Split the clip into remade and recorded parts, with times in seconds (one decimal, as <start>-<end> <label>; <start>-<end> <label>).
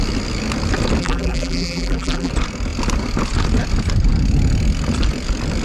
0.0-1.0 recorded; 1.0-2.3 remade; 2.3-5.6 recorded